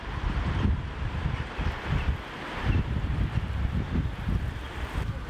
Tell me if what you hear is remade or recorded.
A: remade